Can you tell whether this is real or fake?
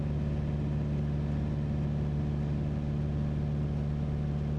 real